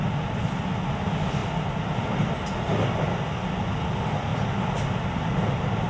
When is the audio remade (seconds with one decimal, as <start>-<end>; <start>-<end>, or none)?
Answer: 1.4-2.1; 4.3-5.4